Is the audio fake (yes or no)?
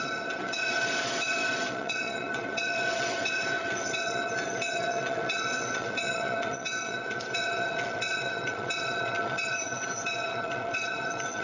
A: yes